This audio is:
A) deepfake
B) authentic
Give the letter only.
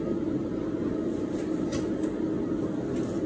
B